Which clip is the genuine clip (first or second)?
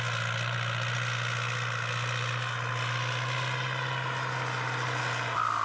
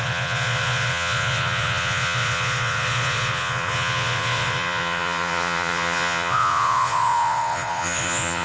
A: first